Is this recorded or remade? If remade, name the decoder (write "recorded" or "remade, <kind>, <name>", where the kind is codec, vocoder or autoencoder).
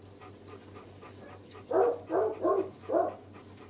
recorded